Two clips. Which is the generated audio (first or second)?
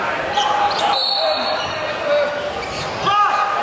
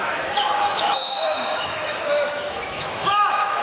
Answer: second